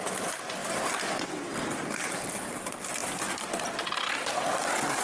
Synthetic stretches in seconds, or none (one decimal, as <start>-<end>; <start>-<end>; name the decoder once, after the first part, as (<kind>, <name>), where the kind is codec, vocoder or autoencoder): none

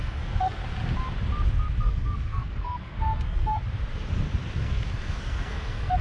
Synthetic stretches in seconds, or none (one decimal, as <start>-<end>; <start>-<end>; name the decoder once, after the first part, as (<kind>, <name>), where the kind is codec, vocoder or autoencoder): 0.0-0.6 (codec, SNAC); 1.8-3.6; 4.6-6.0

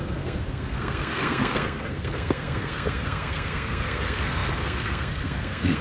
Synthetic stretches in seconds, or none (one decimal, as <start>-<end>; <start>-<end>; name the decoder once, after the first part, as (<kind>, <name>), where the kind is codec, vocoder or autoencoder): 0.0-5.8 (codec, SNAC)

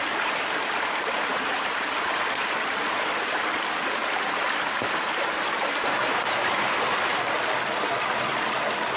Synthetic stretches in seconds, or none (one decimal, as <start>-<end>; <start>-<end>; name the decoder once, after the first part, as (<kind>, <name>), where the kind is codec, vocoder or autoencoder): none